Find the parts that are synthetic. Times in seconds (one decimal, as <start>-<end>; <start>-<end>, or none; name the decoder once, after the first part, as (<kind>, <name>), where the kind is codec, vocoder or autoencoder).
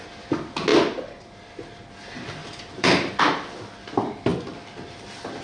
2.4-3.2 (vocoder, BigVGAN v2)